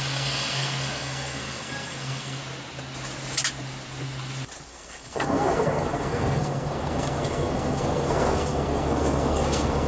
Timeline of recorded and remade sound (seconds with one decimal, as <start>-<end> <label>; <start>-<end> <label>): 0.0-2.4 remade; 2.4-4.7 recorded; 4.7-9.9 remade